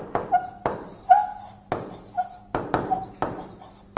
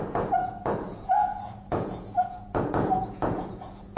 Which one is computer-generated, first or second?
second